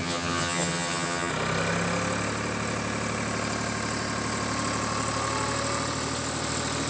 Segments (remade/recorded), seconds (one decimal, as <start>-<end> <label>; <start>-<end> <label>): 0.0-1.3 remade; 1.3-6.9 recorded